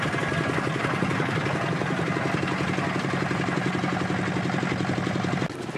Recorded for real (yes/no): yes